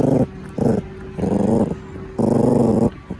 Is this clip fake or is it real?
real